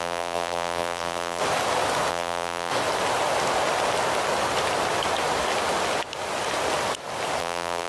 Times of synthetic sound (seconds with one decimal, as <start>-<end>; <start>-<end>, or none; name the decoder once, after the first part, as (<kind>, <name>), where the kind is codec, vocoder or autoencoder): 0.0-1.4 (vocoder, BigVGAN v2); 2.1-2.7; 7.4-7.9